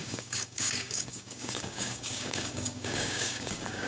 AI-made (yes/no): yes